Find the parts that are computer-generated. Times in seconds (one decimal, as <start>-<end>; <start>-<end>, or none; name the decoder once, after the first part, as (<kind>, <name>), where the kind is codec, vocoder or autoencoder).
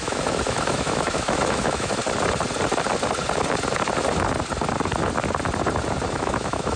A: 0.0-2.0 (autoencoder, DAC-VAE); 6.1-6.8